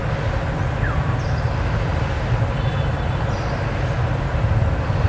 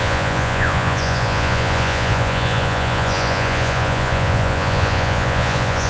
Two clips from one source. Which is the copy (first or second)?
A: second